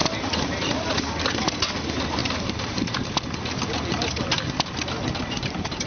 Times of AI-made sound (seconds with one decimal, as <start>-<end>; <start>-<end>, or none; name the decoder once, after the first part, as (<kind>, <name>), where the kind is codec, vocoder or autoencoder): 0.0-1.8 (vocoder, BigVGAN v2); 2.2-2.8